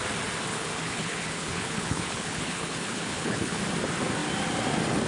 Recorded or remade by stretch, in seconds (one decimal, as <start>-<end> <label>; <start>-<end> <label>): 0.0-0.5 recorded; 0.5-3.6 remade; 3.6-5.1 recorded